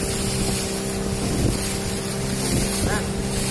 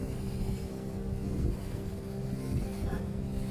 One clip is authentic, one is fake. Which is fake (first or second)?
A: second